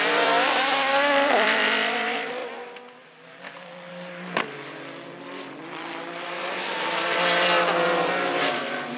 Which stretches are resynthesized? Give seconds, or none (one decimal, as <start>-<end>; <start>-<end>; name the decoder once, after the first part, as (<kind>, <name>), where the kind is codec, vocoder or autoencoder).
0.0-2.4 (vocoder, BigVGAN v2); 3.9-9.0

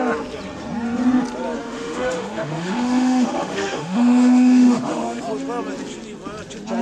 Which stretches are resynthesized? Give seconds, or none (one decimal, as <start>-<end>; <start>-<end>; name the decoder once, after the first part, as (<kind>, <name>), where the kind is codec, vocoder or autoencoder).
1.6-5.2 (autoencoder, DAC-VAE)